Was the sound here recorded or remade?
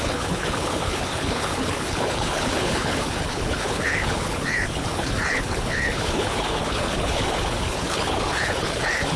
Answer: remade